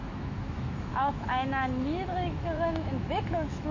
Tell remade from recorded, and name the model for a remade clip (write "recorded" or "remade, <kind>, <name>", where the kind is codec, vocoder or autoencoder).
remade, autoencoder, DAC-VAE